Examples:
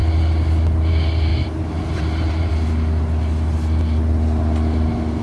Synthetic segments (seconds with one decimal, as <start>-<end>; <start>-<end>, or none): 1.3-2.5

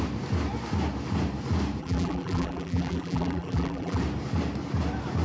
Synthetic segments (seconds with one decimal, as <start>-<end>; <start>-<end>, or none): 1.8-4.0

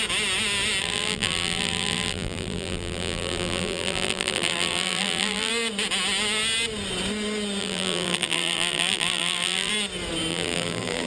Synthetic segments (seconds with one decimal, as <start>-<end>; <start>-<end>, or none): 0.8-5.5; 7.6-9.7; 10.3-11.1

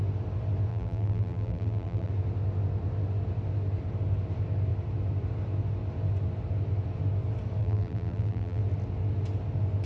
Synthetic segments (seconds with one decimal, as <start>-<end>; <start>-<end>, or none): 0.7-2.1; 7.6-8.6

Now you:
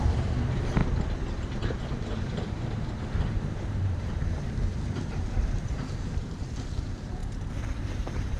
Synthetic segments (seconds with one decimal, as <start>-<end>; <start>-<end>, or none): 0.0-0.8; 1.8-7.2; 7.8-8.4

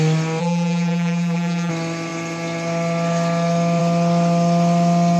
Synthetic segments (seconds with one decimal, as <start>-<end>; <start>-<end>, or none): 0.4-1.7